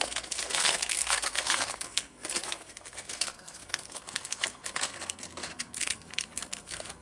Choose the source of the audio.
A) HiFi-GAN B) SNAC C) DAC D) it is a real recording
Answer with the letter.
B